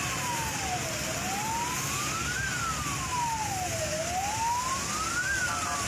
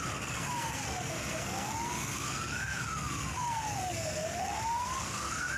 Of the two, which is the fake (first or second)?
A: second